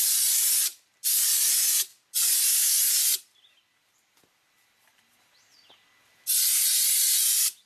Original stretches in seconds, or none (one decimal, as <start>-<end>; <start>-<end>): 0.0-0.7; 1.5-1.9; 5.7-7.7

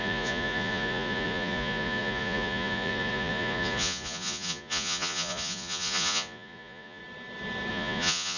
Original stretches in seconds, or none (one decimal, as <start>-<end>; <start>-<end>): 7.0-7.7

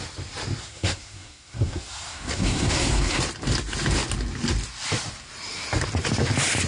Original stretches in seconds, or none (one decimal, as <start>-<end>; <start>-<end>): 0.0-0.6; 3.2-6.7

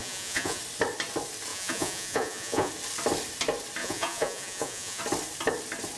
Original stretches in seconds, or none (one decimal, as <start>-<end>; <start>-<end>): 0.6-1.5; 2.7-3.8; 5.0-6.0

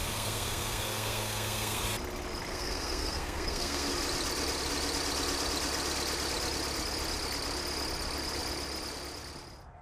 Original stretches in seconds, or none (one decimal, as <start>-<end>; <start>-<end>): 1.8-2.5; 3.9-9.8